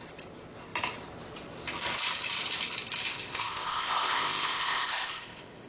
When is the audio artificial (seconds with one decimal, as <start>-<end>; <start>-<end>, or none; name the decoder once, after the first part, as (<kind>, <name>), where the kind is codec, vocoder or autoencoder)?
3.1-5.7 (codec, ZipCodec)